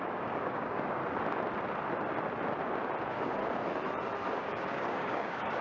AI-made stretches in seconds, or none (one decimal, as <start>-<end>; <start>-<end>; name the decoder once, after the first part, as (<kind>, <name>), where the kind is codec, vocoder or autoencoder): 0.0-1.0 (codec, DAC); 3.0-3.4; 4.4-5.6